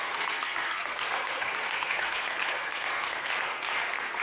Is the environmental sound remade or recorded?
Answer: remade